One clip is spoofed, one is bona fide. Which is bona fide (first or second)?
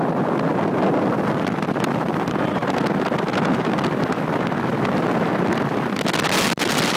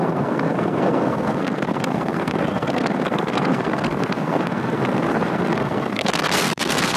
first